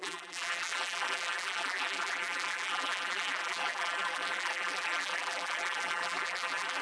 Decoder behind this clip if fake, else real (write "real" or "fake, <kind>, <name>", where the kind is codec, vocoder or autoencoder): fake, vocoder, BigVGAN v2